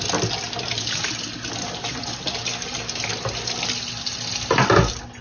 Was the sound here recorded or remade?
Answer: recorded